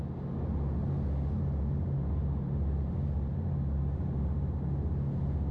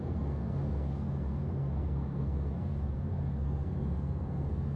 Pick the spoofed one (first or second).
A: second